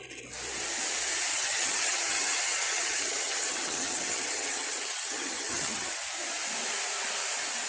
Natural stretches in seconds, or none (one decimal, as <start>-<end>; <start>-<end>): 0.0-1.3; 5.9-7.7